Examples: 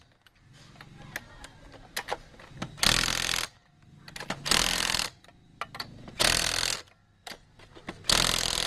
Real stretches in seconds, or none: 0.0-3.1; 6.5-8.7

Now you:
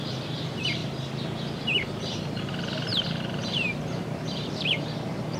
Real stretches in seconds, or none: 0.8-1.6

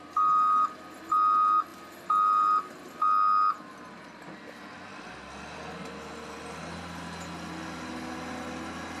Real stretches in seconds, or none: 0.0-1.7; 2.8-9.0

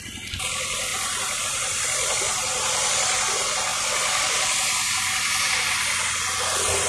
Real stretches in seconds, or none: 0.9-1.4; 3.7-6.9

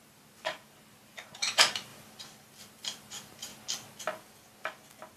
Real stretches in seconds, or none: 1.9-2.6; 3.5-5.2

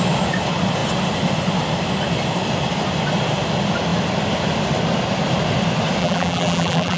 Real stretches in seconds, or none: 0.0-6.0

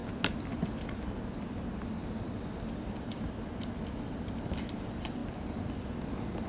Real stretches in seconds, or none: 0.0-6.5

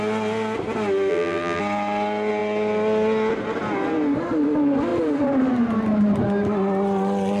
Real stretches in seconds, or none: 0.0-1.1; 1.6-7.4